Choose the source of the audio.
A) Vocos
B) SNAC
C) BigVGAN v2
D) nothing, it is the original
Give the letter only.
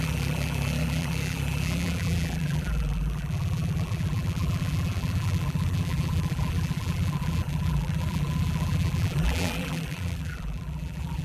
C